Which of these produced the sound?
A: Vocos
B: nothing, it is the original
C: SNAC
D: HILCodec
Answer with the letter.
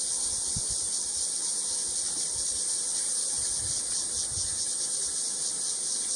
B